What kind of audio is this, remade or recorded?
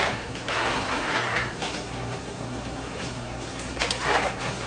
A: remade